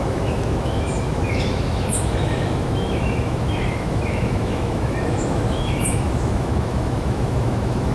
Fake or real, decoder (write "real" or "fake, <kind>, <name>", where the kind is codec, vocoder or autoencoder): fake, autoencoder, DAC-VAE